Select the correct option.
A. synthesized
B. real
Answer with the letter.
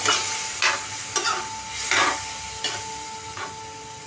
B